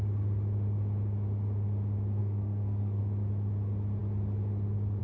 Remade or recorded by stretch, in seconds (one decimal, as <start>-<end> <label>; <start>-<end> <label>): 0.0-2.2 recorded; 2.2-3.0 remade; 3.0-5.0 recorded